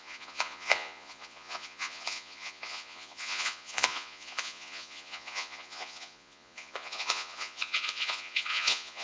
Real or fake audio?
fake